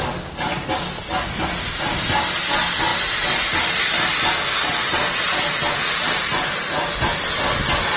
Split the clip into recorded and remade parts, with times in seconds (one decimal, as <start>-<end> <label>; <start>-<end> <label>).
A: 0.0-8.0 recorded